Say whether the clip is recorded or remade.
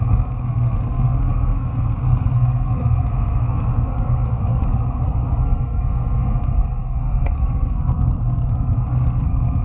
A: remade